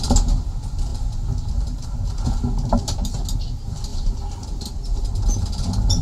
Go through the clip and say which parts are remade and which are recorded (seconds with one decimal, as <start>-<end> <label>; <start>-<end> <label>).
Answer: 0.0-6.0 recorded